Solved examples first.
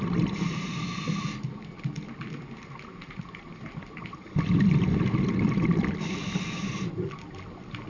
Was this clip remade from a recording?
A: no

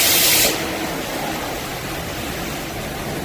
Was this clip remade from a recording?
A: no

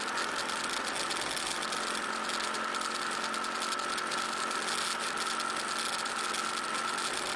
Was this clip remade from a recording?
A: no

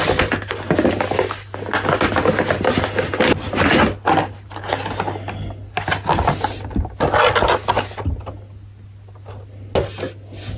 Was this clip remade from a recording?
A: no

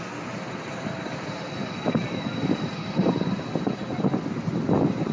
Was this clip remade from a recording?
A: no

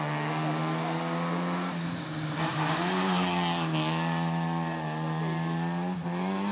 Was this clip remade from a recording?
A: no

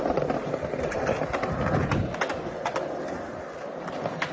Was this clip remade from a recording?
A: no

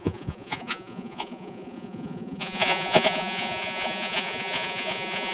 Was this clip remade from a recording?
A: yes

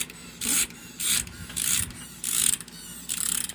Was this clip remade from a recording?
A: yes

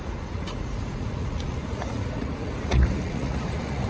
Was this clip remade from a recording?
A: yes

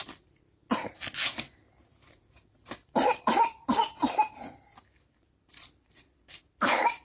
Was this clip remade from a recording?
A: no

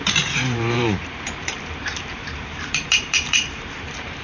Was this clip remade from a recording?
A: yes